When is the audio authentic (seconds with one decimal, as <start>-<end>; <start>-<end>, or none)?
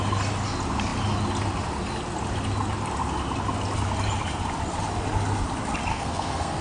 0.0-5.9